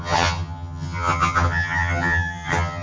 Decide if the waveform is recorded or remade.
remade